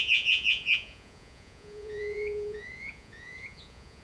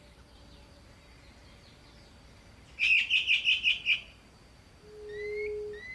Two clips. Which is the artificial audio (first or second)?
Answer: first